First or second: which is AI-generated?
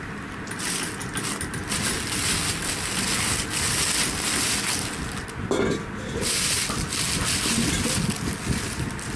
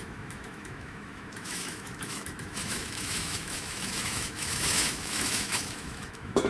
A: second